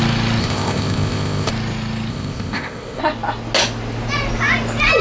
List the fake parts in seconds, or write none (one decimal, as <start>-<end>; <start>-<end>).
0.4-1.5; 2.1-3.0